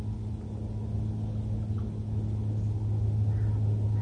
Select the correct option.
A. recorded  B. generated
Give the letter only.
A